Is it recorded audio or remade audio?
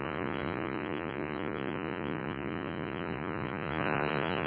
remade